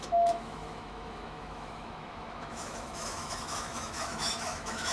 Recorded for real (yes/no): no